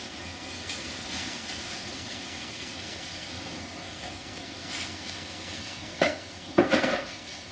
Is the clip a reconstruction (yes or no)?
yes